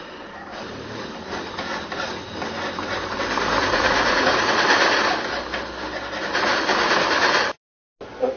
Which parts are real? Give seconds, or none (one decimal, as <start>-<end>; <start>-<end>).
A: 0.0-3.6; 4.4-8.4